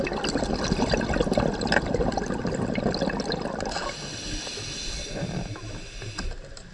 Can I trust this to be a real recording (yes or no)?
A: yes